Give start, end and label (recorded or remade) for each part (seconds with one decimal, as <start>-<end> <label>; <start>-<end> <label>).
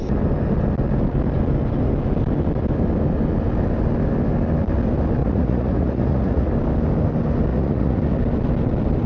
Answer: 0.0-5.2 recorded; 5.2-6.5 remade; 6.5-7.5 recorded; 7.5-8.0 remade; 8.0-9.1 recorded